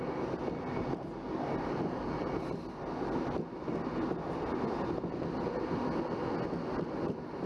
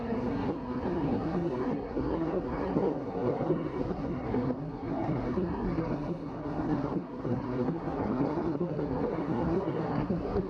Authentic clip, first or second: first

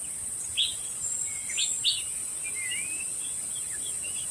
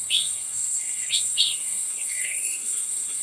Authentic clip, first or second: first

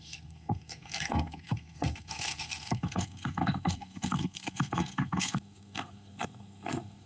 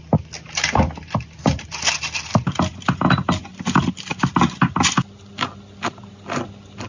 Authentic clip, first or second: second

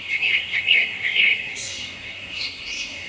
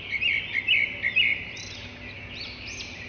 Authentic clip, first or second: second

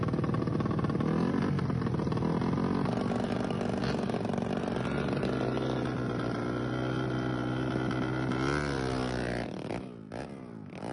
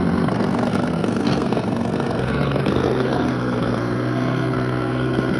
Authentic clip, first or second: first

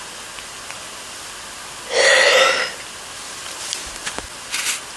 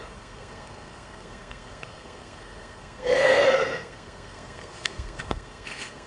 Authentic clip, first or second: first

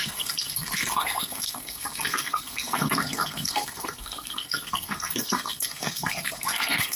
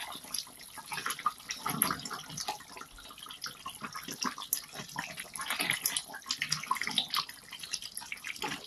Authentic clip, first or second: second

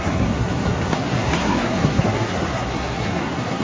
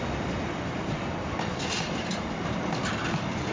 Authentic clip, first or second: second